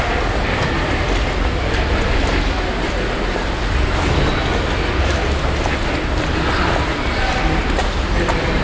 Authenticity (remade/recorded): recorded